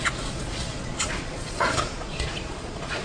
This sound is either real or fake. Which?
fake